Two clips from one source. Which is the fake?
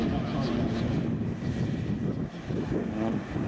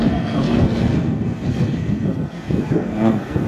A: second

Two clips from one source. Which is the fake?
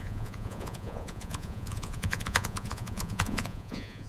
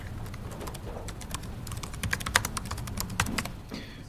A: first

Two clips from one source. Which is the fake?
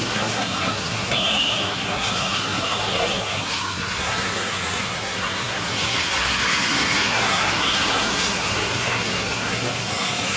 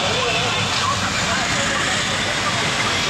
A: first